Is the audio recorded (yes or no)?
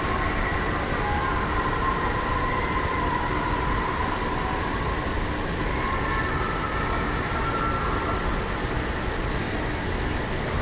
yes